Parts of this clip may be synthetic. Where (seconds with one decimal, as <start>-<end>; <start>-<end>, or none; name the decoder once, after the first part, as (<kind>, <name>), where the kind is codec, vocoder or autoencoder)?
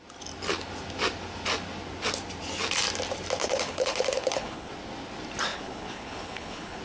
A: 3.4-4.7 (codec, HILCodec); 5.5-6.8